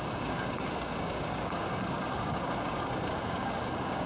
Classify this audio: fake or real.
fake